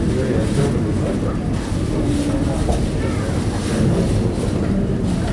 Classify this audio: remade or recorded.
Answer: recorded